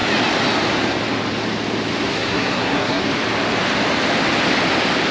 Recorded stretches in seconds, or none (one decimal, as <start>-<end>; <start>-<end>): 0.0-2.1; 3.0-5.1